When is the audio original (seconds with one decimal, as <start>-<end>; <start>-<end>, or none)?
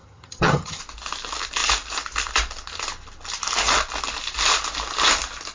0.8-5.5